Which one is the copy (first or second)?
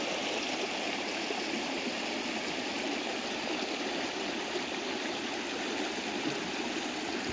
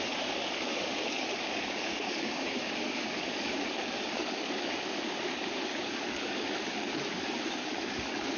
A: second